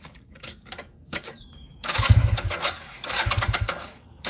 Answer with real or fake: fake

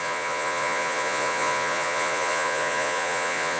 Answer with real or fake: fake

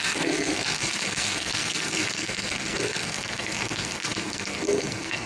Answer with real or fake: fake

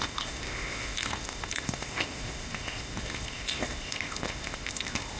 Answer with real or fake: fake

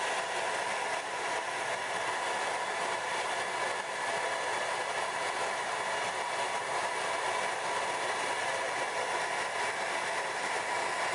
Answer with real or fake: real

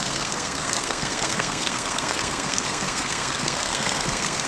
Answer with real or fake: fake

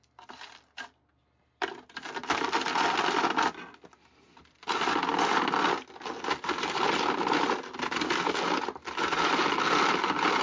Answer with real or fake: real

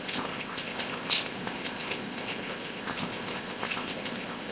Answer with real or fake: fake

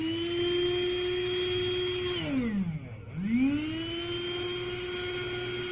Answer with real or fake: real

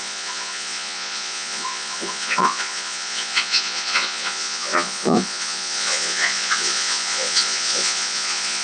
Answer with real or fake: fake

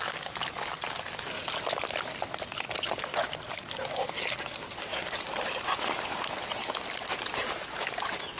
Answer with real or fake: real